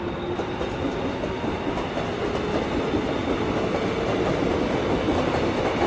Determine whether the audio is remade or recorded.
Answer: recorded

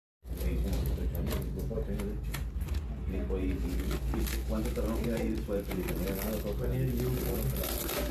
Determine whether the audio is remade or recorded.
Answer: recorded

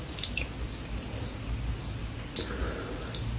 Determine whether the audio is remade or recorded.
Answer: recorded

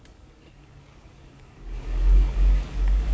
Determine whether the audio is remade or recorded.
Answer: remade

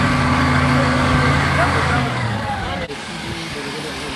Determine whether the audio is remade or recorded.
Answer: remade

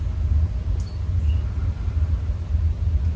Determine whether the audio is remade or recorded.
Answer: recorded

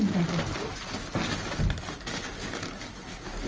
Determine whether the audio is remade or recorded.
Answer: recorded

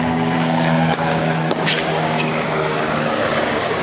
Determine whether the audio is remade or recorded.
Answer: remade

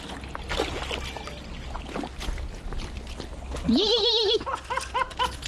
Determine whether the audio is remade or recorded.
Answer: recorded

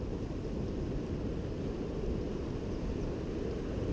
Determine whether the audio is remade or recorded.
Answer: recorded